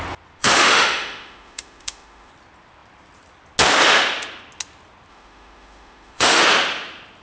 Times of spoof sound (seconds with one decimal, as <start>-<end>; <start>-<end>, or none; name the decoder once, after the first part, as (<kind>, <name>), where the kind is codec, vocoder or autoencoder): 0.4-2.3 (autoencoder, DAC-VAE); 5.1-6.4